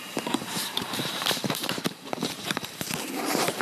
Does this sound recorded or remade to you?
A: remade